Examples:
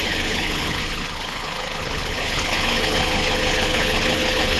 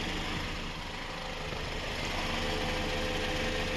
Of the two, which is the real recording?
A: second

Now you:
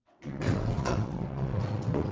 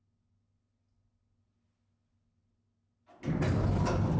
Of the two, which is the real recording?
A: second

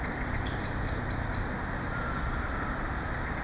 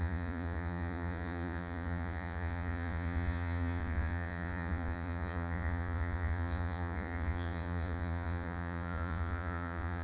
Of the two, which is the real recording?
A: first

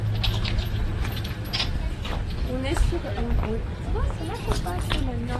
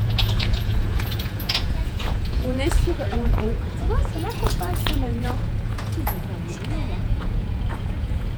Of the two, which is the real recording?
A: first